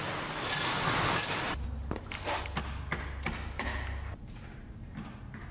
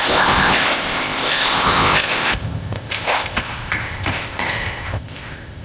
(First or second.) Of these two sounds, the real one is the first